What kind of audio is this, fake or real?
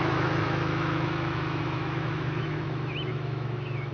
fake